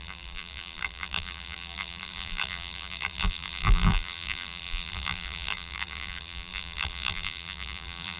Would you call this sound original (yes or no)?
no